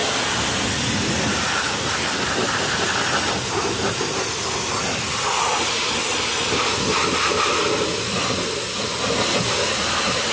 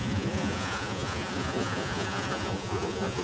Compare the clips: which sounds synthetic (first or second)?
second